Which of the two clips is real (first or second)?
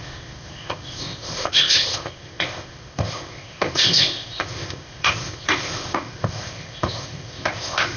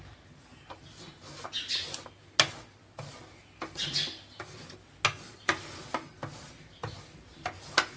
second